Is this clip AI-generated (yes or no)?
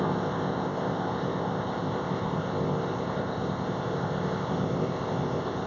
yes